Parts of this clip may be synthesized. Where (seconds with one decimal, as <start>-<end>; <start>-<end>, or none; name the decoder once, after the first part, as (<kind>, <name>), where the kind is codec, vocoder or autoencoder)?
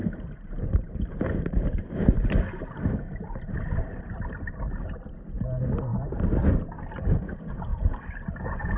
0.0-4.0 (vocoder, BigVGAN v2); 5.9-6.5; 7.7-8.8